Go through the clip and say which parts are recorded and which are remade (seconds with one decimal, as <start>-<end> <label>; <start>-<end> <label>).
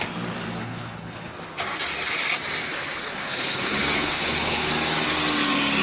0.0-0.6 recorded; 0.6-1.3 remade; 1.3-2.6 recorded; 2.6-4.7 remade; 4.7-5.8 recorded